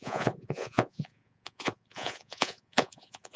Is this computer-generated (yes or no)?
yes